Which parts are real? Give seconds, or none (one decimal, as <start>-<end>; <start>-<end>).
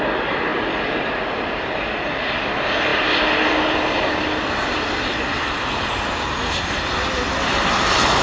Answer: 0.0-8.2